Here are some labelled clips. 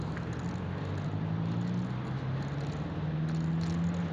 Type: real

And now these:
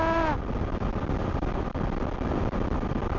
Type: real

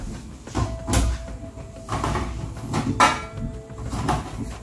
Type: real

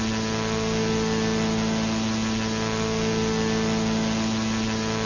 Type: real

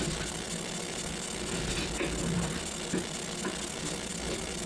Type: real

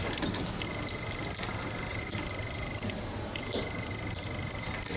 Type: real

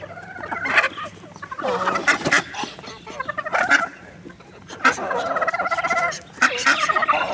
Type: fake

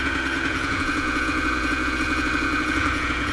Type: fake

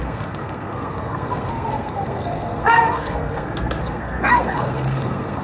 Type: fake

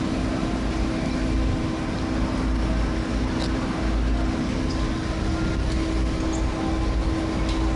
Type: real